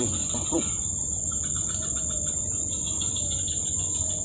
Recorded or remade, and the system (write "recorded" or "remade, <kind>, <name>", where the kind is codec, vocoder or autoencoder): remade, vocoder, Vocos